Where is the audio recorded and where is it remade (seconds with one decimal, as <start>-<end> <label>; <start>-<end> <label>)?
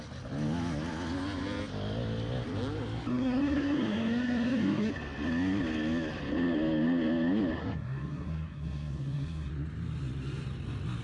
0.0-3.1 recorded; 3.1-4.9 remade; 4.9-7.6 recorded; 7.6-9.5 remade; 9.5-11.0 recorded